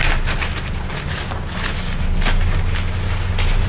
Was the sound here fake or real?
real